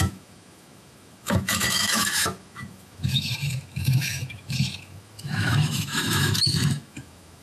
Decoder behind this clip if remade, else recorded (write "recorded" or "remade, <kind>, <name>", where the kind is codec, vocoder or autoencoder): remade, autoencoder, DAC-VAE